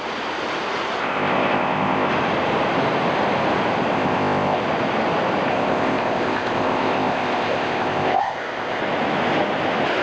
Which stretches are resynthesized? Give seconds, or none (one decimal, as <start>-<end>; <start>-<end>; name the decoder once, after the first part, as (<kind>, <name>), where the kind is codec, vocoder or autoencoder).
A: 1.0-2.1 (codec, ZipCodec); 3.9-4.6; 5.5-8.8